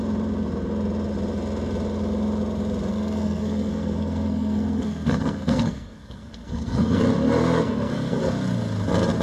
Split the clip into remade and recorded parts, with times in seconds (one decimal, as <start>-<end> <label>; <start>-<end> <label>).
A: 0.0-2.9 recorded; 2.9-7.0 remade; 7.0-7.4 recorded; 7.4-8.2 remade; 8.2-9.2 recorded

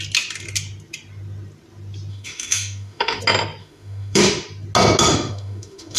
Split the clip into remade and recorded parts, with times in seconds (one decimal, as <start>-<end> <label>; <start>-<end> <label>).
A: 0.0-2.1 recorded; 2.1-3.2 remade; 3.2-3.6 recorded; 3.6-4.2 remade; 4.2-5.1 recorded; 5.1-6.0 remade